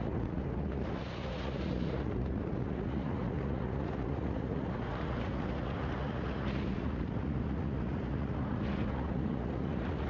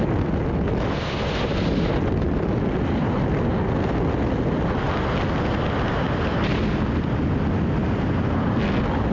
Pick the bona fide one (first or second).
second